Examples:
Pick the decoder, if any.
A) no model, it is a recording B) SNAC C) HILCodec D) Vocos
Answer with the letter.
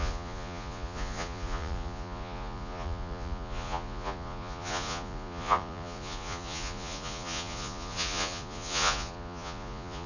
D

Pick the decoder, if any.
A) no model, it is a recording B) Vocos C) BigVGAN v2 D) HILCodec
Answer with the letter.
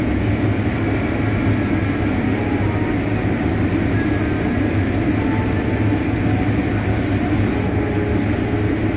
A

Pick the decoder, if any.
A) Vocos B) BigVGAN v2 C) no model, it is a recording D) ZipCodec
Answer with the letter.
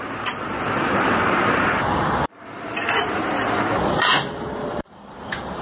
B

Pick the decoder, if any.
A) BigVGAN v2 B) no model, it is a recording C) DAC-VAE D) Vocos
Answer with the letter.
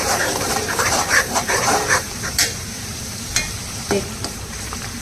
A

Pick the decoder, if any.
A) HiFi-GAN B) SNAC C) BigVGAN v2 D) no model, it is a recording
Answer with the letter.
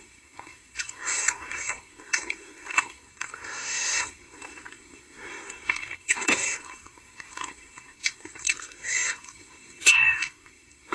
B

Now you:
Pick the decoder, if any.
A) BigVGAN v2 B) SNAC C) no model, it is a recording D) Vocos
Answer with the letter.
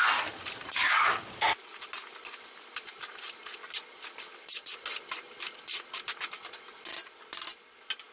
C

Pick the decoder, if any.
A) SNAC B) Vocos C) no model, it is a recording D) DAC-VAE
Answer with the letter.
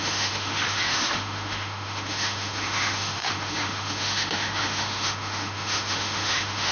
D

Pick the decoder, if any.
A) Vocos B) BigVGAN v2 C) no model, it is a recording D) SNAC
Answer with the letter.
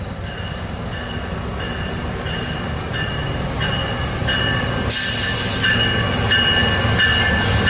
C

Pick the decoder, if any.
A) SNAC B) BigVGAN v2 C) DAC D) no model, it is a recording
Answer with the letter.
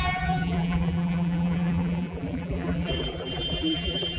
B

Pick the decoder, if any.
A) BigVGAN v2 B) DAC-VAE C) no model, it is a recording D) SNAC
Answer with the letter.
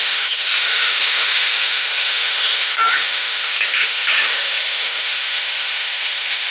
B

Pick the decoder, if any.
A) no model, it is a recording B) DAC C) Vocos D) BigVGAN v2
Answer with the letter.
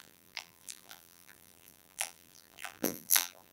D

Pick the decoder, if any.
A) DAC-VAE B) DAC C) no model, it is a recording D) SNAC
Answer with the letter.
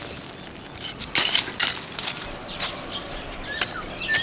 C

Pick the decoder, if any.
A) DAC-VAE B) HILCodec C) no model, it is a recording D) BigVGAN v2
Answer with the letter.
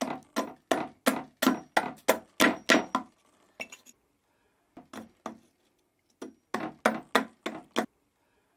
C